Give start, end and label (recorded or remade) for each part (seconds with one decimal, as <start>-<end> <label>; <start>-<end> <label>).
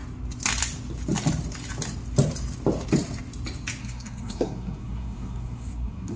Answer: 0.0-3.8 recorded; 3.8-6.2 remade